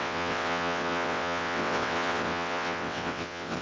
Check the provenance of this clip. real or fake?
fake